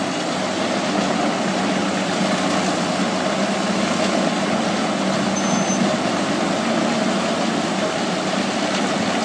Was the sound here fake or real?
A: real